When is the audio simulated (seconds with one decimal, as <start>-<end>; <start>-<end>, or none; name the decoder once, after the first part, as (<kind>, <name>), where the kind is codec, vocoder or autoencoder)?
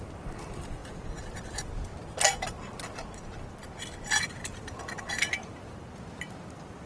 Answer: 0.0-1.9 (vocoder, BigVGAN v2); 4.2-6.9